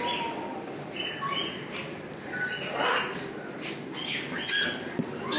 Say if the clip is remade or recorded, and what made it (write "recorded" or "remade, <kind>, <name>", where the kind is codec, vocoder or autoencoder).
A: recorded